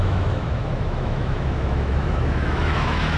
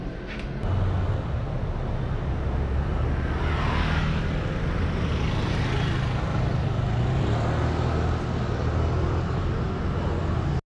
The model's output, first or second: first